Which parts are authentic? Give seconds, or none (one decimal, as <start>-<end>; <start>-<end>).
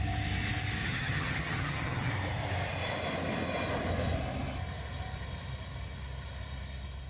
0.0-0.8; 2.1-7.1